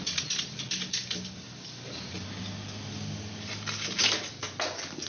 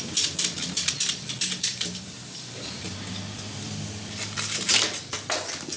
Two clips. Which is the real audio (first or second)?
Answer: first